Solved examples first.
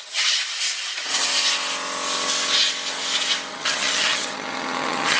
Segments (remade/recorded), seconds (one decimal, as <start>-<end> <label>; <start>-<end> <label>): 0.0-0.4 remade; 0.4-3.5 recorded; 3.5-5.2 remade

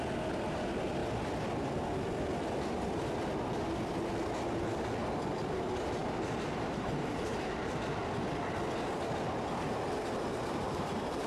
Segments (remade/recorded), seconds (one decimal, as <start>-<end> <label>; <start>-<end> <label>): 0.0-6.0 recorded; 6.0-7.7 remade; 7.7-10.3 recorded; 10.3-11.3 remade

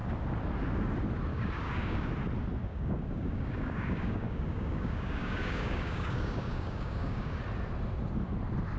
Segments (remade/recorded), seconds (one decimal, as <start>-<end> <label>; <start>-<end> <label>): 0.0-1.3 recorded; 1.3-2.1 remade; 2.1-2.6 recorded; 2.6-7.4 remade; 7.4-8.8 recorded